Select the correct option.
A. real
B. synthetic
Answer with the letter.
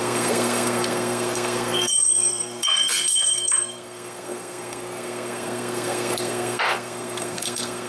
B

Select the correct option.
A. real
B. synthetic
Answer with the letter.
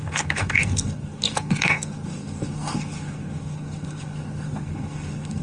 B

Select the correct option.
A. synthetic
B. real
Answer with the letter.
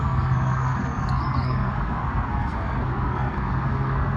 A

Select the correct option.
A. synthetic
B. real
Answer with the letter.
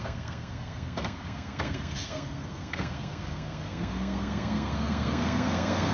A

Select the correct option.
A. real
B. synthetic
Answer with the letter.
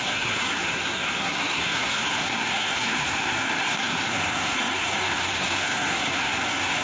B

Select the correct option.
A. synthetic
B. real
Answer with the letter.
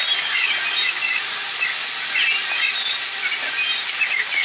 B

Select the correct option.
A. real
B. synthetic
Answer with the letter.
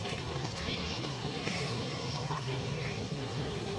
B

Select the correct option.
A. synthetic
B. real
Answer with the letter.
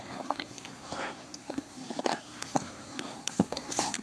A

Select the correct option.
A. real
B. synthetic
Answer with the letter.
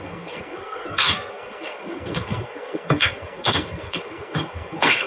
B